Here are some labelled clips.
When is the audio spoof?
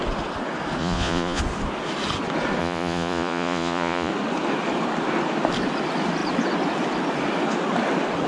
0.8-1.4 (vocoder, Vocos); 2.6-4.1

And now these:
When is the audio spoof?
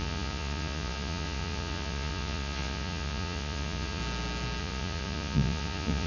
0.0-4.0 (vocoder, Vocos); 4.6-6.1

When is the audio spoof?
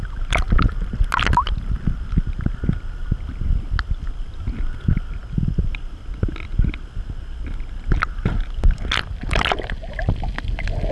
none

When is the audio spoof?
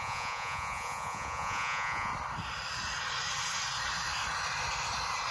0.0-2.1 (vocoder, Vocos)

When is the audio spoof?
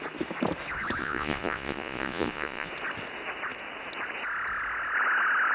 1.0-2.7 (vocoder, Vocos)